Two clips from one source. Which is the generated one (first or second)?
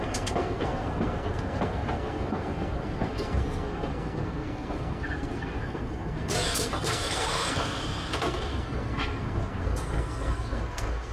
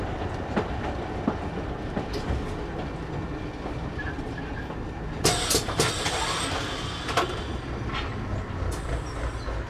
first